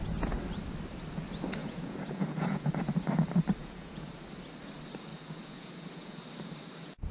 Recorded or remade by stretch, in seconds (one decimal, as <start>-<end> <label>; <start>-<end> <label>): 0.0-1.6 recorded; 1.6-2.7 remade; 2.7-3.6 recorded; 3.6-4.1 remade; 4.1-5.1 recorded; 5.1-6.2 remade; 6.2-7.1 recorded